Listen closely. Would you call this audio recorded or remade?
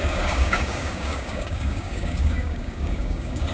remade